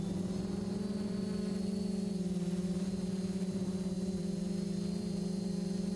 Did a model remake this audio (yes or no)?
yes